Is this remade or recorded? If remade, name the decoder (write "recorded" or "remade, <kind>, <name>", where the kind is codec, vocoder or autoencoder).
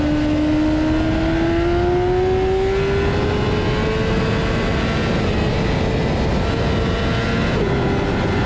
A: recorded